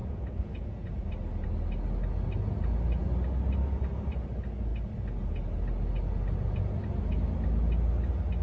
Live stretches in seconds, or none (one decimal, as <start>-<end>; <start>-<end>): 0.9-8.4

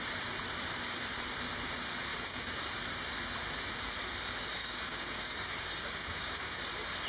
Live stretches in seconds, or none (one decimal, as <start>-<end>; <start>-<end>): 0.0-2.1; 2.6-4.6; 6.6-7.1

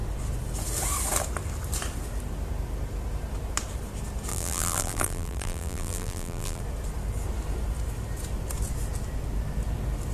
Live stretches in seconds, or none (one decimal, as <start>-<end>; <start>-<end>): 0.0-4.3; 6.6-10.1

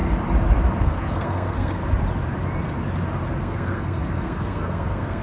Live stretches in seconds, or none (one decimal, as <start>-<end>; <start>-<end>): 0.0-0.8; 1.8-3.4

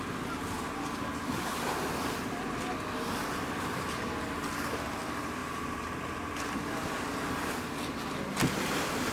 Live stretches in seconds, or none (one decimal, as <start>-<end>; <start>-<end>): 0.0-9.1

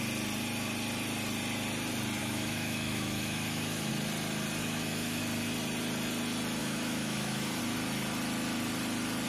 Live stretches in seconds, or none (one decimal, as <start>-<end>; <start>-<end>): 0.0-2.2; 3.9-4.6; 5.2-6.6; 7.6-9.3

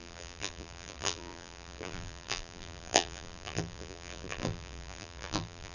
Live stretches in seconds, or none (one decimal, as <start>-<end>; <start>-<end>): none

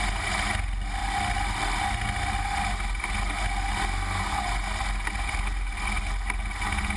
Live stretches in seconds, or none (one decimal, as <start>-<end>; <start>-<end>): 0.0-7.0